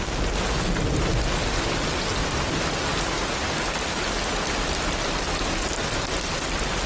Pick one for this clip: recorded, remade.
recorded